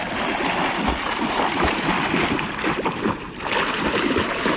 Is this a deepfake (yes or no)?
no